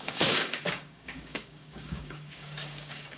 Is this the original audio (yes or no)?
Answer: no